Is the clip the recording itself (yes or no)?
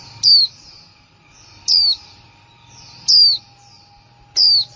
yes